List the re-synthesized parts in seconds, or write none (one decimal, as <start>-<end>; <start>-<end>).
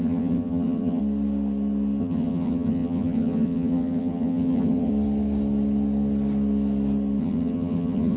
0.0-1.0; 2.0-4.9; 7.2-8.2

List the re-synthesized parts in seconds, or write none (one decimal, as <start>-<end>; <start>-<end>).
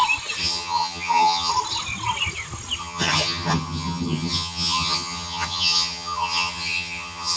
0.4-1.5; 2.8-7.4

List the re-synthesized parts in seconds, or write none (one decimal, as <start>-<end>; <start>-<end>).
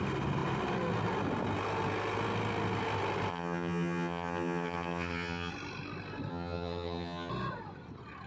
3.3-5.5; 6.3-7.3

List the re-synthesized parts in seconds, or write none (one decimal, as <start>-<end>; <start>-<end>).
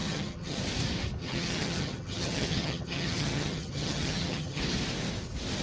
0.0-0.6; 1.2-4.6